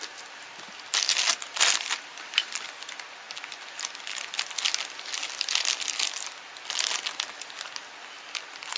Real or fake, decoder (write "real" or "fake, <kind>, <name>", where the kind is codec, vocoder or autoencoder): real